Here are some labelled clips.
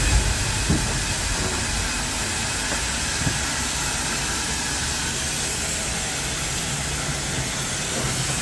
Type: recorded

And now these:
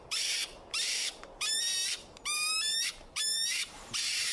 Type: remade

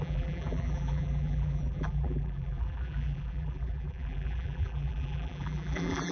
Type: remade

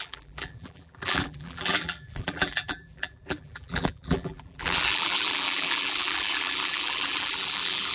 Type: remade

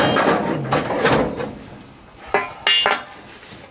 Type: recorded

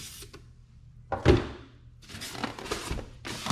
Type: recorded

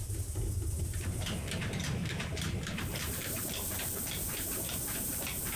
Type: remade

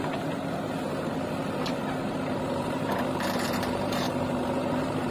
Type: remade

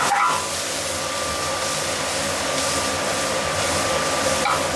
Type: recorded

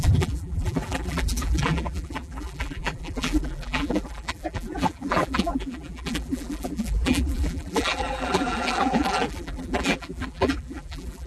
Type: remade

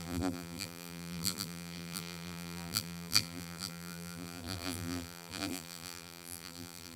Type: remade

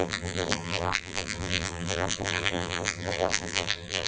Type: remade